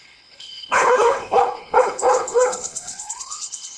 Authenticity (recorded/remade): remade